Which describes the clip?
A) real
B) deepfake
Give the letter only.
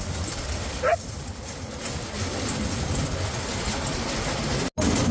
A